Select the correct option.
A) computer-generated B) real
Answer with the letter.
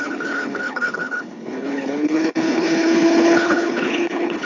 A